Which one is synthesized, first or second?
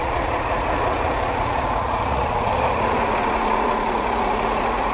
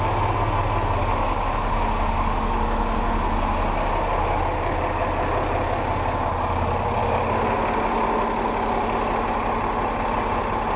first